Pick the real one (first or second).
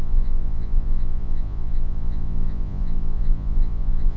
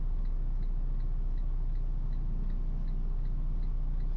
second